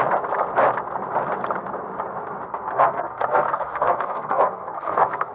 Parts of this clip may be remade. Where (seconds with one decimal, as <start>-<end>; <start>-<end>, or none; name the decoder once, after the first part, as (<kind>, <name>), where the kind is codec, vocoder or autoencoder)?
2.5-5.3 (codec, SNAC)